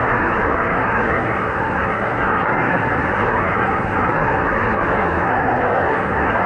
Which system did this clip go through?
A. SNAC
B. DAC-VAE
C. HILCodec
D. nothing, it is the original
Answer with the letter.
A